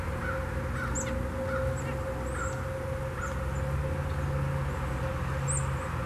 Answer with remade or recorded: recorded